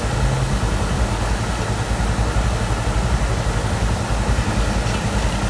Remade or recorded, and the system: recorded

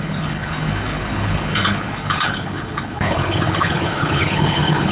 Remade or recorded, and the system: remade, codec, HILCodec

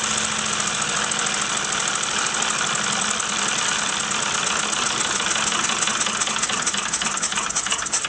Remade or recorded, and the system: recorded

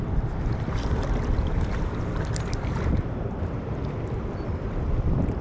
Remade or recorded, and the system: remade, vocoder, BigVGAN v2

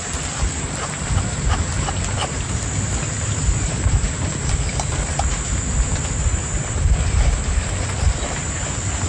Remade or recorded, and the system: recorded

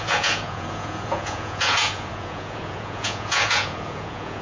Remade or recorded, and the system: remade, vocoder, Vocos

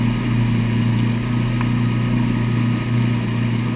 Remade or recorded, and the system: recorded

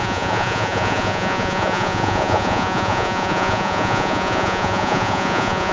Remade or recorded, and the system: remade, vocoder, Vocos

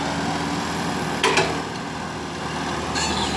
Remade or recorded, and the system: recorded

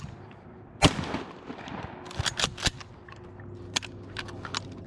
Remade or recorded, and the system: recorded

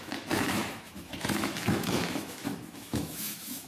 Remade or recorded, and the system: remade, autoencoder, DAC-VAE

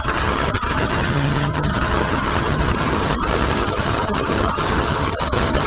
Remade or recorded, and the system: remade, vocoder, HiFi-GAN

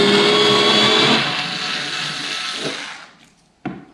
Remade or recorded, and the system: recorded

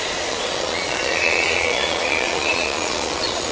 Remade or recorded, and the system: remade, vocoder, Vocos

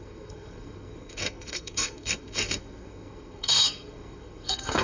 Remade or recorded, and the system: remade, codec, SNAC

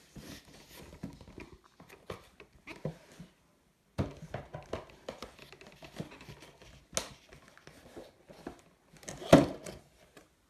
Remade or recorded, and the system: recorded